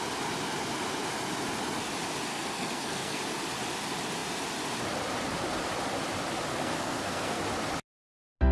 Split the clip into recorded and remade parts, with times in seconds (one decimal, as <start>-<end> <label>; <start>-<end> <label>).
0.0-2.3 recorded; 2.3-3.2 remade; 3.2-6.5 recorded; 6.5-7.4 remade; 7.4-8.5 recorded